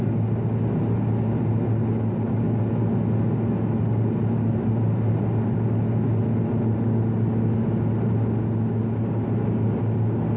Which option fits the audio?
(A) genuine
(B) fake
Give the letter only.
A